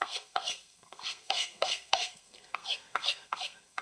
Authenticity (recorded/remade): remade